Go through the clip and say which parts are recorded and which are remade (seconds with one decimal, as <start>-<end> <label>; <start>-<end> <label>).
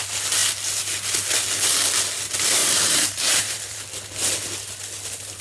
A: 0.0-2.6 recorded; 2.6-3.8 remade; 3.8-5.4 recorded